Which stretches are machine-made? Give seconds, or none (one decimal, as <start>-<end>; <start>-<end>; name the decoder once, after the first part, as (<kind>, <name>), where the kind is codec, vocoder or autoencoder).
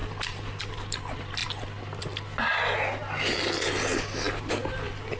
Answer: none